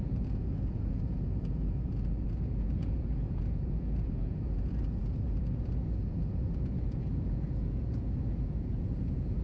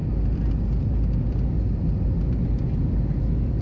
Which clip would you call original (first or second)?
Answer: second